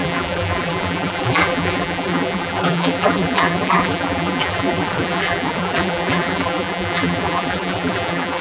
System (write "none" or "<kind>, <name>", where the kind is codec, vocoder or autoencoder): vocoder, BigVGAN v2